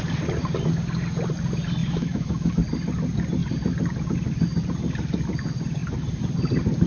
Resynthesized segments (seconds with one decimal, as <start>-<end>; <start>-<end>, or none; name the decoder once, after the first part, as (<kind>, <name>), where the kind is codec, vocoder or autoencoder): 1.8-2.5 (autoencoder, DAC-VAE)